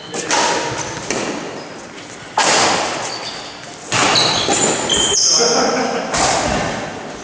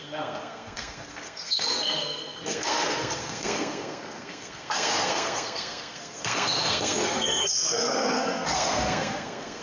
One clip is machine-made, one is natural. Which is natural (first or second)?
first